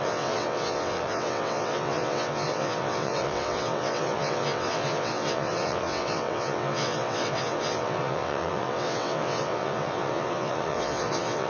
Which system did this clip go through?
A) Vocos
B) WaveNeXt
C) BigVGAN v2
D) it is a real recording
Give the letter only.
B